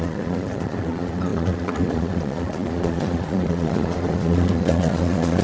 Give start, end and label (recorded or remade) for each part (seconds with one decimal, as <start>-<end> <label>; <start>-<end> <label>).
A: 0.0-5.4 remade